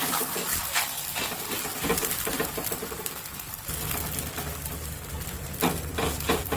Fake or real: real